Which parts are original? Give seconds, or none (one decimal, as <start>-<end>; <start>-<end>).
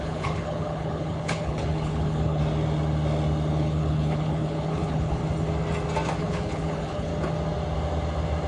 2.4-3.5; 5.2-6.2; 7.1-8.5